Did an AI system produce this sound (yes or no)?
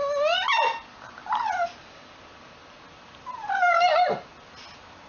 no